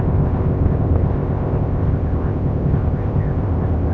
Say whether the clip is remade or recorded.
remade